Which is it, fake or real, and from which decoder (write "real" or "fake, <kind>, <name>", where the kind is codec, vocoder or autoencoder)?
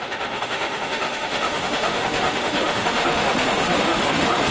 fake, autoencoder, DAC-VAE